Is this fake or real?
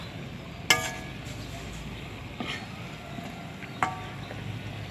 real